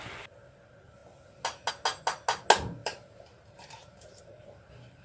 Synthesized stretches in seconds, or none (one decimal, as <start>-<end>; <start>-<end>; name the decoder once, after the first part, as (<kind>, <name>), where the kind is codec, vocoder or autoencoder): 2.8-4.2 (vocoder, BigVGAN v2)